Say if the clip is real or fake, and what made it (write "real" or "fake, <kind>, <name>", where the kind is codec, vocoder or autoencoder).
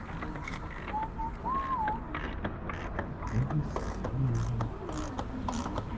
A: real